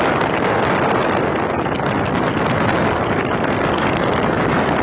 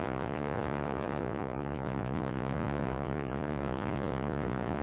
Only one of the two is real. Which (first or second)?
first